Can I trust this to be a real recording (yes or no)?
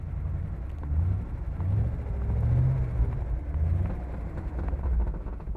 yes